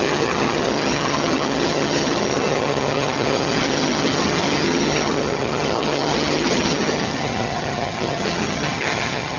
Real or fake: fake